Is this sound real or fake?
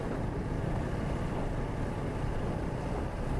real